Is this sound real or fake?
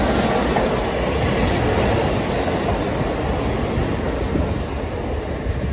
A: real